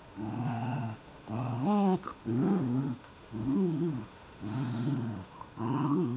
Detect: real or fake fake